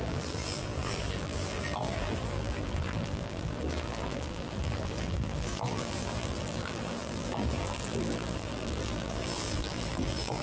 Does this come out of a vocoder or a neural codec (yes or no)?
yes